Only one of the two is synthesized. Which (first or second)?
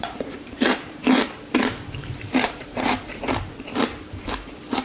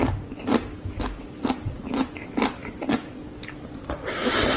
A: first